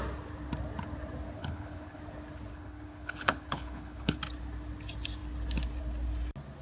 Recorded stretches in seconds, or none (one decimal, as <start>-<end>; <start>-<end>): 0.0-1.4; 2.0-2.5; 4.2-6.6